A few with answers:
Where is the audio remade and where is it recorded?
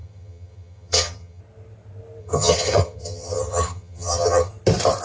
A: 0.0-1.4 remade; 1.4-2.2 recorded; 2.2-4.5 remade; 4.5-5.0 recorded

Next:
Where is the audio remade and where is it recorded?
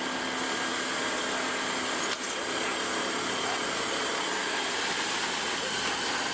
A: 0.0-6.3 recorded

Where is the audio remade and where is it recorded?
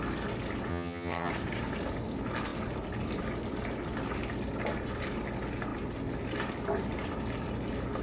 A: 0.0-0.7 recorded; 0.7-1.3 remade; 1.3-8.0 recorded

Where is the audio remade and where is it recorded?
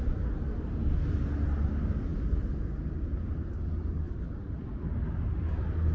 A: 0.0-5.9 recorded